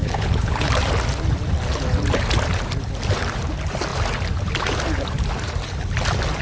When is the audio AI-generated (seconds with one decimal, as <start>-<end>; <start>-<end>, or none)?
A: 0.0-0.7